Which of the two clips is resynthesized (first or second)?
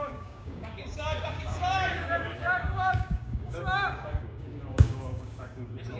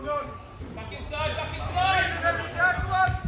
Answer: first